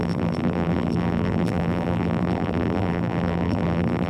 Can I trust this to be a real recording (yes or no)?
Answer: no